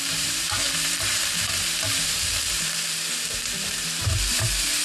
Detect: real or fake fake